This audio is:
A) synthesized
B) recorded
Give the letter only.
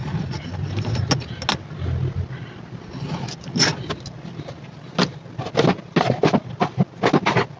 B